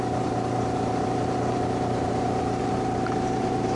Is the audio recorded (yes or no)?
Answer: no